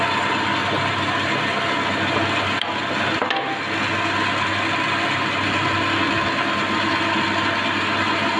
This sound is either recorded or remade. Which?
recorded